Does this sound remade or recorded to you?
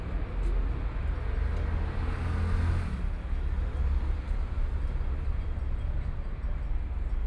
recorded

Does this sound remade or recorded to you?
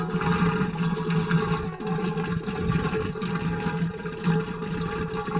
recorded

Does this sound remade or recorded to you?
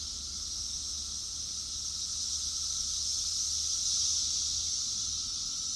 recorded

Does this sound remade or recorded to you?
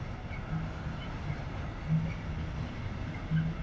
recorded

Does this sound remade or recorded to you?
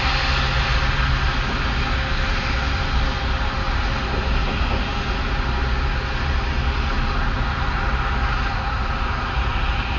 recorded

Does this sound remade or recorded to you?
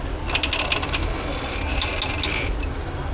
recorded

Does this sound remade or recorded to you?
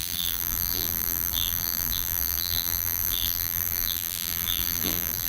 remade